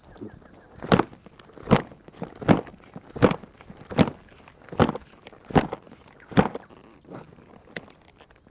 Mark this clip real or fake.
real